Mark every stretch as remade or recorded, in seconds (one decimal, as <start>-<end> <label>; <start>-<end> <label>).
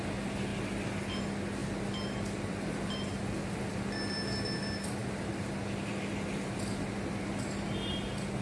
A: 0.0-8.4 recorded